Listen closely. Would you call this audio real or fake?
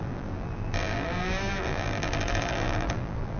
fake